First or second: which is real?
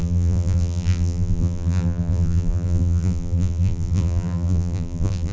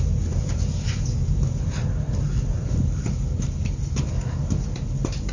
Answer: second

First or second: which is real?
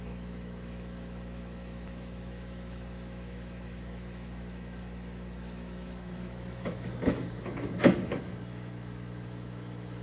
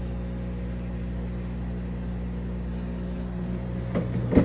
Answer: second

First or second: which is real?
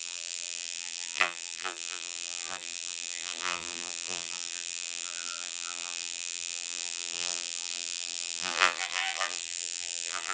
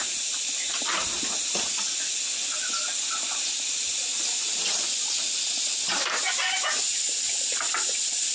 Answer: second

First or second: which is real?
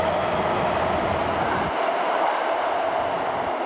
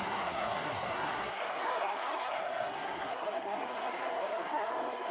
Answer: first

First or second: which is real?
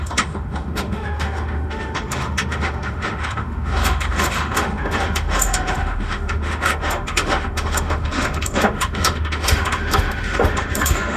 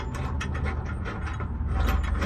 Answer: second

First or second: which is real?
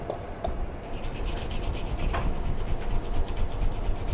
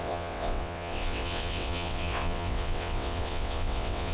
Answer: first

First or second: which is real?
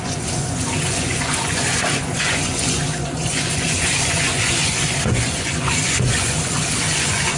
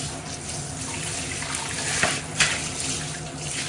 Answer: second